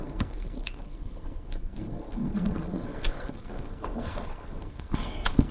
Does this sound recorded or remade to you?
remade